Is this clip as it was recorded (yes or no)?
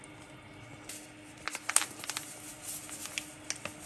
yes